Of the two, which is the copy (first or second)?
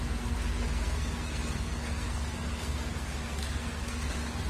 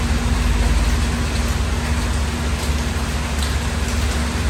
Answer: first